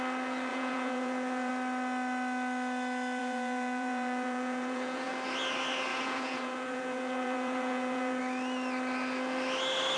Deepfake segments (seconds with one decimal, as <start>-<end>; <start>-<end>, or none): 0.5-1.5; 3.2-5.1; 5.9-8.2